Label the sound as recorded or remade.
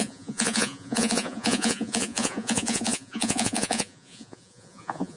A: remade